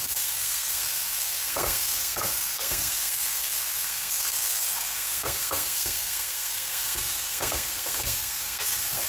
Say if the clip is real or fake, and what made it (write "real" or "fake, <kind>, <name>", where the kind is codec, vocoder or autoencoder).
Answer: fake, codec, SNAC